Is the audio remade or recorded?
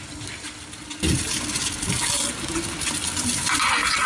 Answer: recorded